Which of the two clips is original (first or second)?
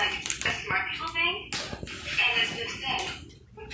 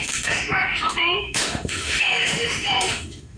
first